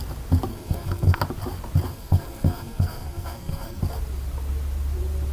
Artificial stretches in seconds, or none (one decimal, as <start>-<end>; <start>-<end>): 0.5-1.2; 1.9-3.8